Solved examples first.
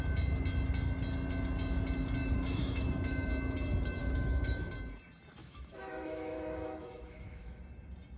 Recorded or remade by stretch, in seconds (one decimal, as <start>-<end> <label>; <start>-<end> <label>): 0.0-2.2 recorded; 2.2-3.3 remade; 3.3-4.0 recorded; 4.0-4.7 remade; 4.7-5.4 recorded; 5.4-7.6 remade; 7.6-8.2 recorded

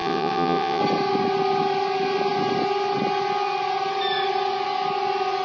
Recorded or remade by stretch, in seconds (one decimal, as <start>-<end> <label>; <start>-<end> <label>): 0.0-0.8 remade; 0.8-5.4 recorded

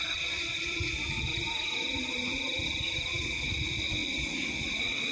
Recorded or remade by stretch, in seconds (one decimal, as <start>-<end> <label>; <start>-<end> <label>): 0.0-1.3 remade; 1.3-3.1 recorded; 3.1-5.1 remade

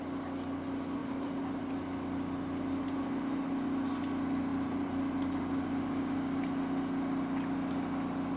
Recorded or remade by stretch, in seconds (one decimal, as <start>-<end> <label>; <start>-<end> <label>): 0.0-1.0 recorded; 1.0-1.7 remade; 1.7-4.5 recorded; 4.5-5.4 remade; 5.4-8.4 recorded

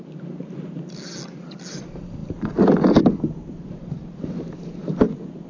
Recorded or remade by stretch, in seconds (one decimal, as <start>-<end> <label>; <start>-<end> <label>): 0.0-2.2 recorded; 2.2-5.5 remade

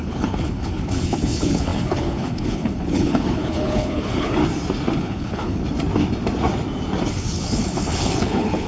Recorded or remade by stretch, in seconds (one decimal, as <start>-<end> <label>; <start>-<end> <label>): 0.0-4.4 remade; 4.4-5.0 recorded; 5.0-5.6 remade; 5.6-7.1 recorded; 7.1-8.7 remade

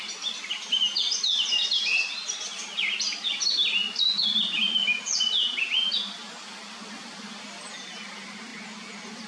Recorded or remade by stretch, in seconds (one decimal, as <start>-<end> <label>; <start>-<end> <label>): 0.0-9.3 recorded